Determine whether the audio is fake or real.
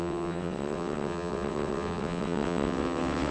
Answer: fake